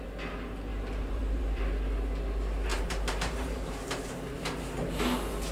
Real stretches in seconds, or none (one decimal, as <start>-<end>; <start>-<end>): 0.0-0.7; 1.7-2.7; 4.6-5.5